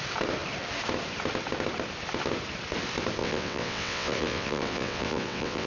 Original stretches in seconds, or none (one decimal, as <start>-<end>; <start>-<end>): 0.0-3.2